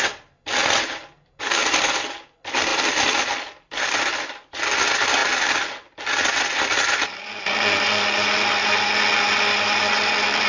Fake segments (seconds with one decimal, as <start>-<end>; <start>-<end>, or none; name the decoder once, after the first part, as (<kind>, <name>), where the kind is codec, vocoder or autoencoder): 2.7-4.6 (vocoder, BigVGAN v2)